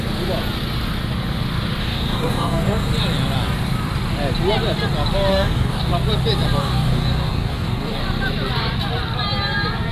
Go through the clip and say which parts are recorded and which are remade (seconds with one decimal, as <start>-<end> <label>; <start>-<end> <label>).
0.0-1.8 recorded; 1.8-2.9 remade; 2.9-5.3 recorded; 5.3-5.9 remade; 5.9-6.6 recorded; 6.6-8.0 remade; 8.0-9.9 recorded